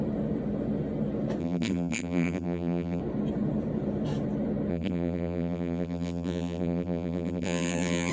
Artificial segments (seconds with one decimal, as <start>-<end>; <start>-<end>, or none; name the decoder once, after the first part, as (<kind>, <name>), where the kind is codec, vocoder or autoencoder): 1.4-3.0 (vocoder, BigVGAN v2); 4.7-8.1